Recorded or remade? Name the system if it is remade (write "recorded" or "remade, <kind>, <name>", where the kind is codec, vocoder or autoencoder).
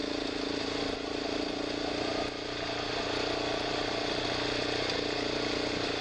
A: recorded